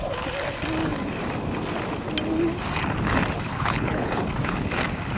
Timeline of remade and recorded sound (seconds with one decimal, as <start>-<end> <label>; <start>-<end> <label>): 0.0-3.5 recorded; 3.5-4.2 remade; 4.2-5.2 recorded